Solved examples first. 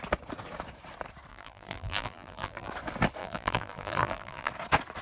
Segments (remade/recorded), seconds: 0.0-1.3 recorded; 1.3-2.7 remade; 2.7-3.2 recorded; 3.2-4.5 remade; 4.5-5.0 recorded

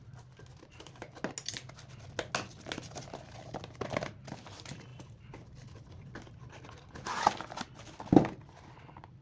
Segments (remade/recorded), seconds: 0.0-9.2 recorded

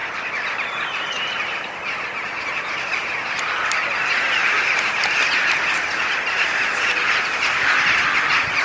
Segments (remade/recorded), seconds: 0.0-8.6 remade